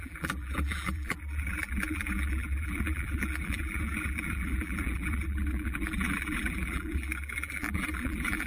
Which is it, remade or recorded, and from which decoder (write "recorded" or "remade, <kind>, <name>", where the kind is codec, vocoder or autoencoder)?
remade, vocoder, BigVGAN v2